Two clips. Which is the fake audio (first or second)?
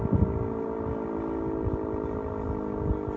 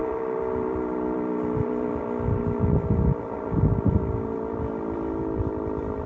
second